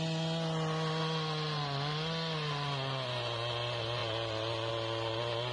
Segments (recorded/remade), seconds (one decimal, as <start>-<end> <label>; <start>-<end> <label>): 0.0-5.5 recorded